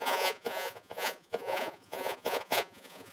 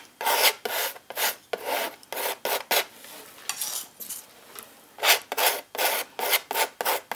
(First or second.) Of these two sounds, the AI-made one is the first